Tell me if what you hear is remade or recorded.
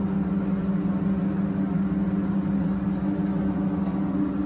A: recorded